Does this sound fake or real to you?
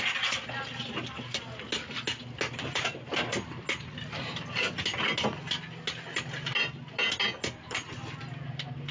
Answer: real